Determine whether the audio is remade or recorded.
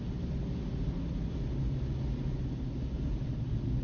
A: recorded